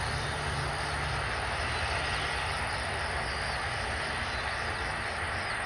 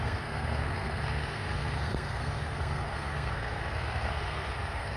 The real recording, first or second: first